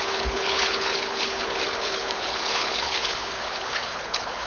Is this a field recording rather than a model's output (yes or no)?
no